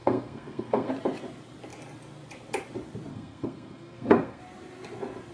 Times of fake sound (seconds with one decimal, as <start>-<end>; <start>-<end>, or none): 0.0-0.9; 3.1-4.4